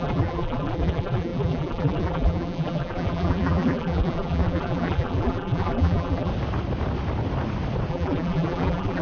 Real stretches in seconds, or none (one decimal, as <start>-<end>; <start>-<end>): 6.3-7.9